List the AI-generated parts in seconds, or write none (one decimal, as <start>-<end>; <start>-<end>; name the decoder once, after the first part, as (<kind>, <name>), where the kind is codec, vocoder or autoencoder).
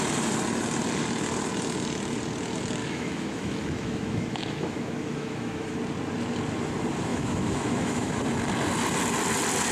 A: 2.8-5.8 (autoencoder, DAC-VAE); 7.1-8.1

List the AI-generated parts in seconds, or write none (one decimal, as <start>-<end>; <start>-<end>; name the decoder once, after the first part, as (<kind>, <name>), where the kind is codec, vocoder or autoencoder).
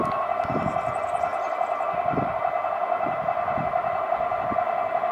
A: none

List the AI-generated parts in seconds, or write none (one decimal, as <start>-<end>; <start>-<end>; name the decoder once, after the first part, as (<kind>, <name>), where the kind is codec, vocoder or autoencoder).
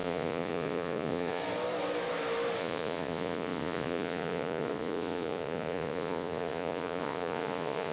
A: 0.0-1.4 (vocoder, Vocos); 2.6-7.9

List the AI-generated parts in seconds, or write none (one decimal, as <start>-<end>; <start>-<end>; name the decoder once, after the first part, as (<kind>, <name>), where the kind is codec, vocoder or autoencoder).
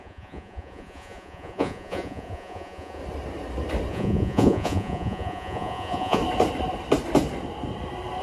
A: 0.0-3.0 (vocoder, Vocos); 3.9-6.2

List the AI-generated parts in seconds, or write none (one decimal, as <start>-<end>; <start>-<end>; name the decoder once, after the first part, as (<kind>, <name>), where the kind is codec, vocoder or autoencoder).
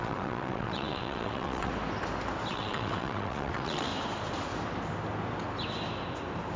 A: 0.0-1.7 (vocoder, WaveNeXt); 2.5-3.9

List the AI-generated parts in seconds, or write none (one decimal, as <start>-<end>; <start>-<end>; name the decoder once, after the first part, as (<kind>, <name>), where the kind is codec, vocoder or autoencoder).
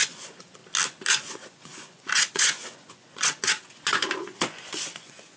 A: 0.0-0.6 (vocoder, Vocos); 1.1-5.4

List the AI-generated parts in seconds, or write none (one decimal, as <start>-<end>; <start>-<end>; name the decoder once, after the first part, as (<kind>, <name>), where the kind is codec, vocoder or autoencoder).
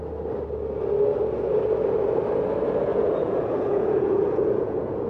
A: 2.9-5.1 (vocoder, Vocos)